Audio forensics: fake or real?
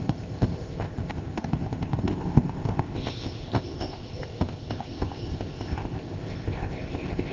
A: fake